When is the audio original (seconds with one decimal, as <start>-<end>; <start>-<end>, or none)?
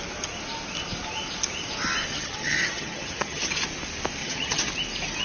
0.0-2.1; 3.5-4.2; 4.7-5.2